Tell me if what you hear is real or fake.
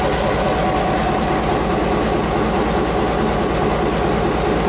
real